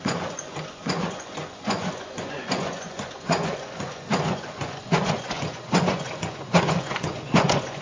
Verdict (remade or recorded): remade